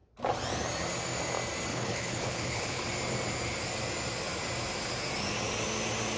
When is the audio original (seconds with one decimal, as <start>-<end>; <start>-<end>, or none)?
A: 0.0-1.7; 2.8-6.2